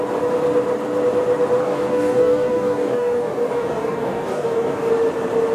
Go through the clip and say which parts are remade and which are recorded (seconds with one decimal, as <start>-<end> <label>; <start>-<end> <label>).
0.0-1.6 recorded; 1.6-4.9 remade; 4.9-5.5 recorded